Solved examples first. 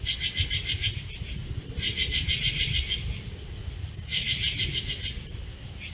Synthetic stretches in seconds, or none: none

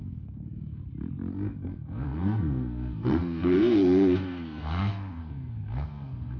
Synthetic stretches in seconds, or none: 0.0-0.8 (codec, SNAC); 1.3-6.4